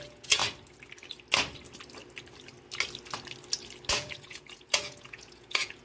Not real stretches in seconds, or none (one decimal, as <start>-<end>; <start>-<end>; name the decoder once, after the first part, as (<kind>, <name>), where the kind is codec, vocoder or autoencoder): 0.0-0.4 (vocoder, Vocos); 3.9-5.8